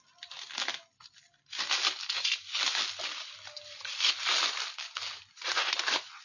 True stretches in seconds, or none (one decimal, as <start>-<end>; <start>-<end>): 0.0-6.2